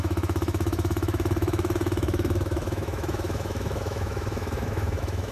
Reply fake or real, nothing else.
fake